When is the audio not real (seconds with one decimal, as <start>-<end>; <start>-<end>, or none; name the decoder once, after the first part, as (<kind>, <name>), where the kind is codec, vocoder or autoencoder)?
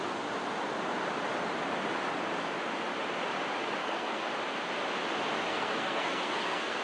3.8-4.3 (codec, SNAC); 5.5-6.8